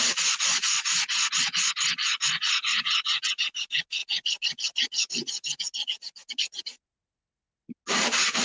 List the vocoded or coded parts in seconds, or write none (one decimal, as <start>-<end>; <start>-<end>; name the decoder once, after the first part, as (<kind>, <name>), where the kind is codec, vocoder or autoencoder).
none

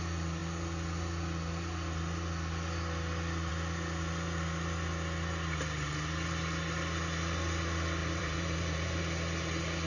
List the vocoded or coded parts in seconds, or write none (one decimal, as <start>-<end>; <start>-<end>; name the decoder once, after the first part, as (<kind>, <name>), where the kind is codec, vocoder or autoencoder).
8.0-9.0 (vocoder, BigVGAN v2)

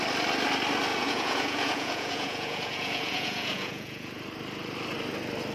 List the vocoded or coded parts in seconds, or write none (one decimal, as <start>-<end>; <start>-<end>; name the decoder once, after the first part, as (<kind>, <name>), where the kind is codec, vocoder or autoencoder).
0.9-4.2 (vocoder, Vocos)

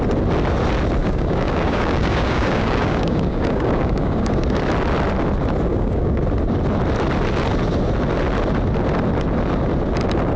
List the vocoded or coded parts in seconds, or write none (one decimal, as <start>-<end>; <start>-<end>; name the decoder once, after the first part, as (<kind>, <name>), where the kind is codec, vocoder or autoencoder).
1.0-4.6 (codec, DAC); 5.7-6.2

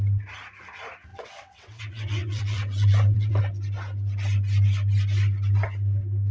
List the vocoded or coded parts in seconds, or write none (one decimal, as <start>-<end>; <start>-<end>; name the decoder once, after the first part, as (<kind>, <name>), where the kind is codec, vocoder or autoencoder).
1.1-3.4 (vocoder, WaveNeXt)

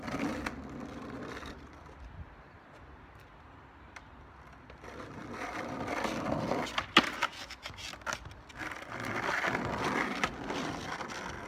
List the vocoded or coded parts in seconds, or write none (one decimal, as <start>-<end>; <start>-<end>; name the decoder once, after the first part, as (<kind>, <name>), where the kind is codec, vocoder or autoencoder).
none